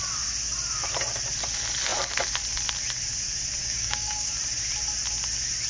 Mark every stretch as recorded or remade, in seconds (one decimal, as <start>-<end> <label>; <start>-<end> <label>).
0.0-3.6 recorded; 3.6-4.3 remade; 4.3-5.7 recorded